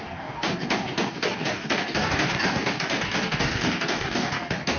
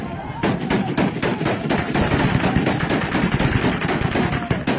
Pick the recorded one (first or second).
second